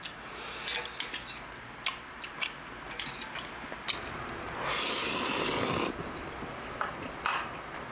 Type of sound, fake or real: real